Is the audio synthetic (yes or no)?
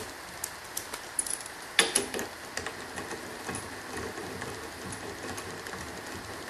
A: no